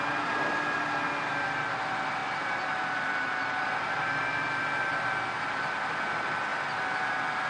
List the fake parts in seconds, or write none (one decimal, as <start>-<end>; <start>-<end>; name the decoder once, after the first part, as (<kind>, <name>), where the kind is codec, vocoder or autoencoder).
none